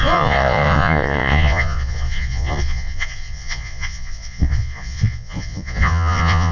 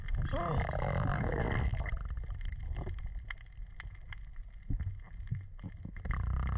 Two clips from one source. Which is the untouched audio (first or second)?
second